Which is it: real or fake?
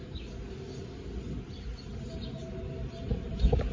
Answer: real